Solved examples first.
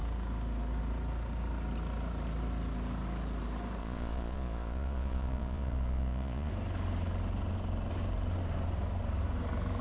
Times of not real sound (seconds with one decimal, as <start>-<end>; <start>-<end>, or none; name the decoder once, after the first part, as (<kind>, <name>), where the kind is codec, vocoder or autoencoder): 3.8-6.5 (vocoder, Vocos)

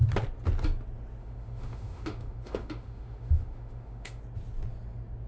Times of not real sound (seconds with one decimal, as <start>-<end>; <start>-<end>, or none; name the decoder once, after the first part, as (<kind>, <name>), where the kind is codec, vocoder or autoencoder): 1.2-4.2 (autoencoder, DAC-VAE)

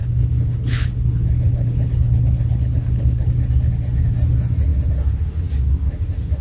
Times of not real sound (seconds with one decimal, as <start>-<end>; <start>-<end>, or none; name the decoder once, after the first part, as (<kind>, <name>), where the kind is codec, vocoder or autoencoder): 0.0-3.3 (codec, HILCodec)

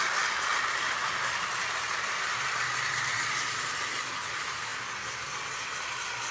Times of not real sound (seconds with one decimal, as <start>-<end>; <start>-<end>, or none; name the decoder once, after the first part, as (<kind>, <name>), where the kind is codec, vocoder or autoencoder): none

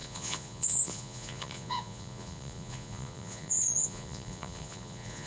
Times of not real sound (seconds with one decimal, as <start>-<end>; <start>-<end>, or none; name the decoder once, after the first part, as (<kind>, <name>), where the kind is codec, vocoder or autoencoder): 0.0-5.3 (vocoder, Vocos)

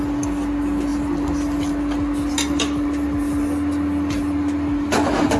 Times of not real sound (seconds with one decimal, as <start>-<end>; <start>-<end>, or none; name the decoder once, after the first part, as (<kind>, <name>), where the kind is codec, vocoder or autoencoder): none